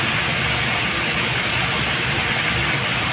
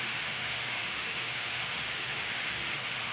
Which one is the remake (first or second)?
second